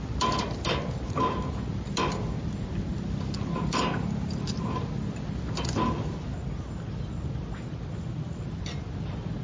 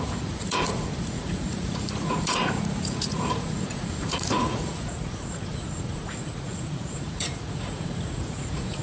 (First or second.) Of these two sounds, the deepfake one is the second